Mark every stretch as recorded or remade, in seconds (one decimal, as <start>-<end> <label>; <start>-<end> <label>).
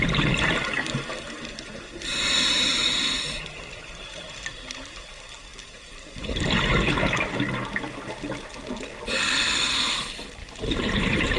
0.0-3.7 recorded; 3.7-4.2 remade; 4.2-5.6 recorded; 5.6-6.2 remade; 6.2-10.4 recorded; 10.4-11.4 remade